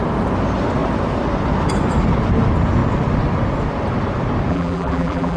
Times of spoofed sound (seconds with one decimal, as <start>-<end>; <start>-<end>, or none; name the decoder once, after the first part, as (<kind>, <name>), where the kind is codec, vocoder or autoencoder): 4.5-5.4 (vocoder, BigVGAN v2)